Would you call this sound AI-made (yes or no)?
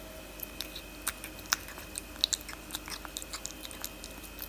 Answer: no